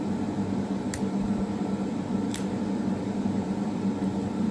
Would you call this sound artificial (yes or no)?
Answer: yes